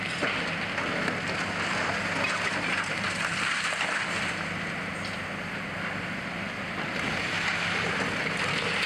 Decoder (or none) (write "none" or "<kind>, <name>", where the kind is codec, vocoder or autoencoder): none